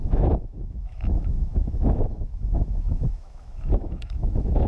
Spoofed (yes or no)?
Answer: yes